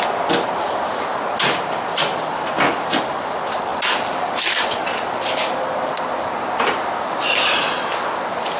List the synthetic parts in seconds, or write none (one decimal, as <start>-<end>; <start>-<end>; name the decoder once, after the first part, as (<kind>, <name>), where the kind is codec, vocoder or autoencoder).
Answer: none